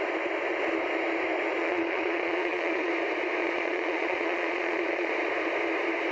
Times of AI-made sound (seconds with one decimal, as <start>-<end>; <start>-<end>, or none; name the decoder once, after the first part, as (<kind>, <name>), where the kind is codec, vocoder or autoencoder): 1.6-2.9 (vocoder, Vocos); 3.4-5.1